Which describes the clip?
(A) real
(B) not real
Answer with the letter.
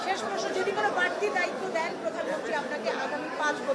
A